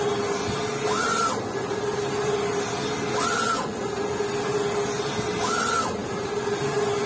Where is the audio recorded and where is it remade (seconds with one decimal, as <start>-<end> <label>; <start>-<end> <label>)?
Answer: 0.0-7.1 recorded